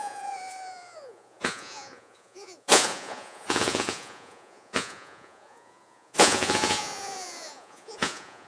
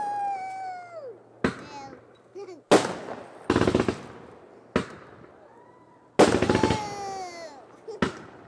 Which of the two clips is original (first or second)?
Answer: second